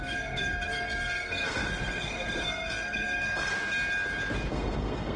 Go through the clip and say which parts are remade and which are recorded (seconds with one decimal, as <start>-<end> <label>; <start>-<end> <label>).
0.0-3.5 remade; 3.5-4.5 recorded; 4.5-5.2 remade